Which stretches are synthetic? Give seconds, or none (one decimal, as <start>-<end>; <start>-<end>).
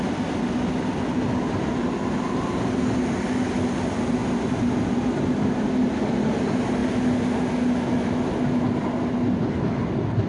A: none